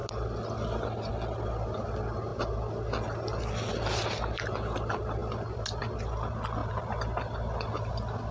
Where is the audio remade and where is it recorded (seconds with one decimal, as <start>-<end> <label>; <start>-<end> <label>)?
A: 0.0-8.3 recorded